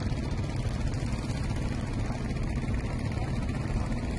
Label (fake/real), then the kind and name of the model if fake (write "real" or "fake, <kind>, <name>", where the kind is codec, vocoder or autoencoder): real